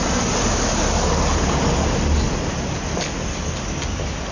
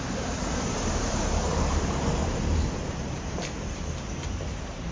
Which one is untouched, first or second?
first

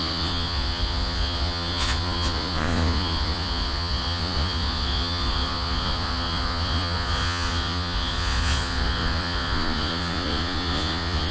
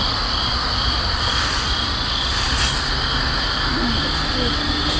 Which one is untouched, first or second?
second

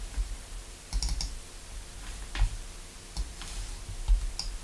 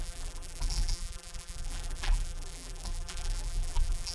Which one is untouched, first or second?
first